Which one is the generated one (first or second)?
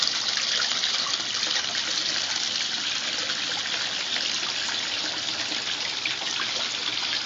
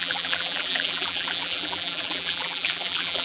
second